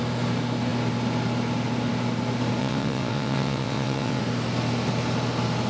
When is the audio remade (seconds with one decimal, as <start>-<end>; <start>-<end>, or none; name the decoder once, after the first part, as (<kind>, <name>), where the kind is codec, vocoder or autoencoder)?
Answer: 2.6-4.2 (vocoder, WaveNeXt)